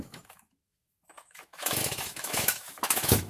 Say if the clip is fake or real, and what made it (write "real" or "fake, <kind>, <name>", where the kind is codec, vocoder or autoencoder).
fake, autoencoder, DAC-VAE